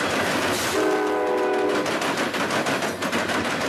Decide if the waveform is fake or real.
real